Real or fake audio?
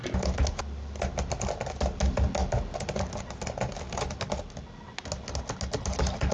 real